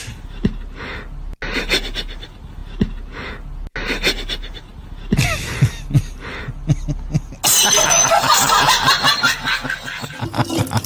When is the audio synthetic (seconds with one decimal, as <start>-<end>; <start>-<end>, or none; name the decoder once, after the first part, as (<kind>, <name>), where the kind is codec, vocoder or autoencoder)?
none